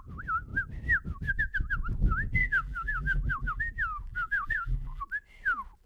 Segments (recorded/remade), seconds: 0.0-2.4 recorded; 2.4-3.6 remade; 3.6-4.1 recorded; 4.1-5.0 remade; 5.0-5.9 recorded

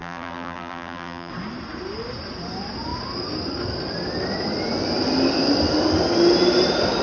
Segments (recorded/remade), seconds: 0.0-1.3 remade; 1.3-7.0 recorded

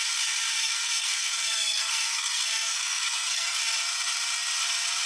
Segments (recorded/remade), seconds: 0.0-0.5 recorded; 0.5-3.6 remade; 3.6-5.1 recorded

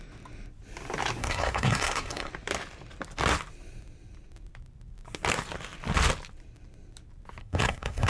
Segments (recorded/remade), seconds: 0.0-1.2 recorded; 1.2-2.3 remade; 2.3-7.4 recorded; 7.4-8.1 remade

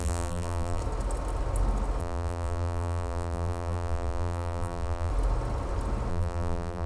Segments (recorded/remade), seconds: 0.0-0.8 remade; 0.8-2.0 recorded; 2.0-5.1 remade; 5.1-6.1 recorded; 6.1-6.9 remade

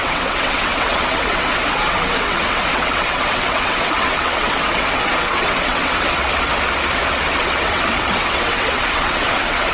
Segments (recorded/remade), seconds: 0.0-6.5 remade; 6.5-7.4 recorded; 7.4-9.7 remade

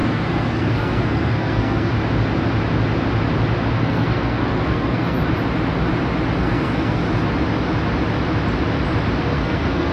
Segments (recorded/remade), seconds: 0.0-1.9 remade; 1.9-3.7 recorded; 3.7-5.2 remade; 5.2-6.4 recorded; 6.4-7.0 remade; 7.0-9.2 recorded; 9.2-9.9 remade

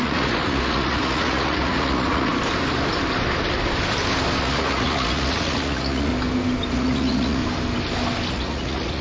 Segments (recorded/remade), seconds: 0.0-2.3 remade; 2.3-4.4 recorded; 4.4-6.1 remade; 6.1-6.7 recorded; 6.7-7.4 remade; 7.4-8.3 recorded; 8.3-9.0 remade